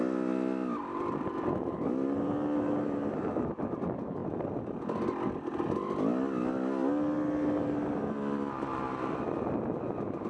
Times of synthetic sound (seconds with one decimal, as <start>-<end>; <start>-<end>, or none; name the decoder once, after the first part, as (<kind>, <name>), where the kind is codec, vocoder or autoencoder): none